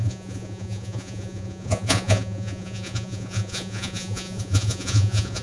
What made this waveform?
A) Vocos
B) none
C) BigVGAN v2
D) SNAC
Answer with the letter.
A